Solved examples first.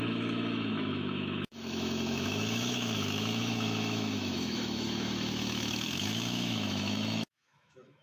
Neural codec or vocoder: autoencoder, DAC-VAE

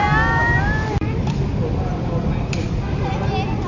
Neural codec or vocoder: none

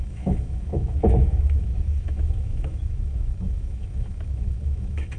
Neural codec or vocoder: autoencoder, DAC-VAE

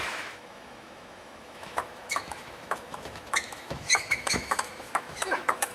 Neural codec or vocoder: autoencoder, DAC-VAE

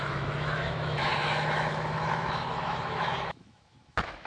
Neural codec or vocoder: autoencoder, DAC-VAE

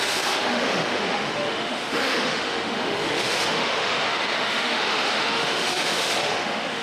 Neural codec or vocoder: autoencoder, DAC-VAE